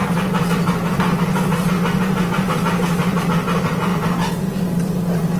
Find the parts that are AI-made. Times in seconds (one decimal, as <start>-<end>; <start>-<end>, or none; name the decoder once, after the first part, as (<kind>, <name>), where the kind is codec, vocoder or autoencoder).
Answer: none